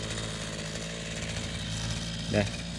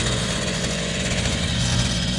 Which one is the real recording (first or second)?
first